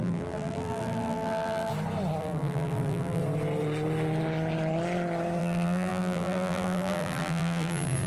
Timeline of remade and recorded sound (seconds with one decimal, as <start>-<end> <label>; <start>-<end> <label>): 0.0-1.7 remade; 1.7-2.2 recorded; 2.2-3.2 remade; 3.2-5.4 recorded; 5.4-8.1 remade